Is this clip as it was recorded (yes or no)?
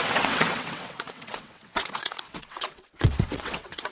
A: no